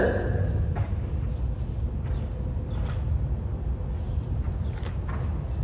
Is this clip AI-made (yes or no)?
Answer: no